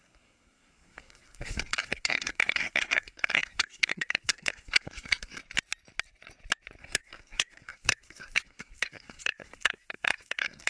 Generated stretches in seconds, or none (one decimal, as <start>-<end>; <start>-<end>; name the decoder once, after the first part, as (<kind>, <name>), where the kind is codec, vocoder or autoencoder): 0.0-5.4 (codec, SNAC); 6.8-10.7